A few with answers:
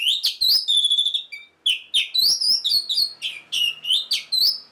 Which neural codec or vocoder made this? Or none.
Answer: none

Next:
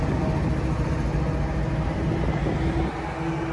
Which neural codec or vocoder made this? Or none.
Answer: none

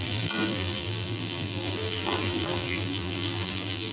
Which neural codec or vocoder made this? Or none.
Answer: vocoder, BigVGAN v2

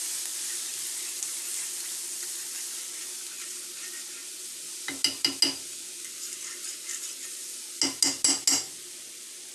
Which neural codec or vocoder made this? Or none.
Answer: none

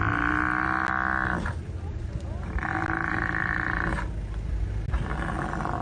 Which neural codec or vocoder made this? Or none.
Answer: none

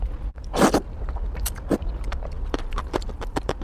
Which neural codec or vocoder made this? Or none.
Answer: vocoder, BigVGAN v2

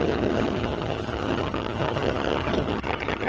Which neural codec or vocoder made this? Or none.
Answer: vocoder, HiFi-GAN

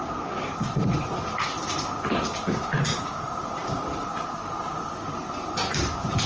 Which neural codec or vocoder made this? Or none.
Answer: vocoder, BigVGAN v2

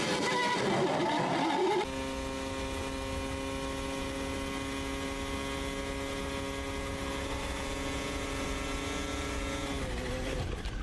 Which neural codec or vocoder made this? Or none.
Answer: none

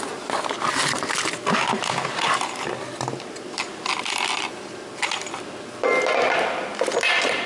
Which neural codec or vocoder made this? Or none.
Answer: none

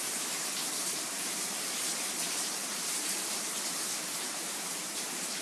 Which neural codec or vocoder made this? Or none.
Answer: vocoder, BigVGAN v2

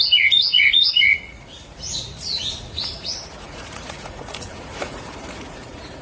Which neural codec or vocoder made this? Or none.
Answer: vocoder, Vocos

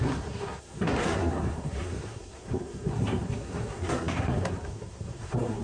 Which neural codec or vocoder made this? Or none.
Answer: codec, SNAC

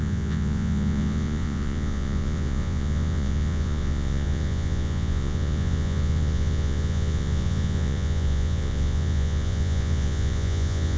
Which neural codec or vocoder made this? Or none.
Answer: vocoder, Vocos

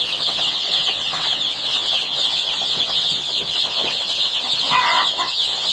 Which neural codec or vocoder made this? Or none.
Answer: vocoder, WaveNeXt